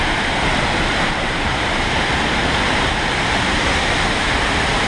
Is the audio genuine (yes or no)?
no